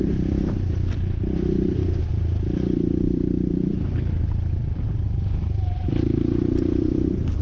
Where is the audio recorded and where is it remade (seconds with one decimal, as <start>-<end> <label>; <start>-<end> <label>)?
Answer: 0.0-7.4 remade